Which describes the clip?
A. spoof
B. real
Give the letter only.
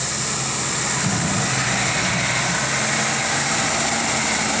B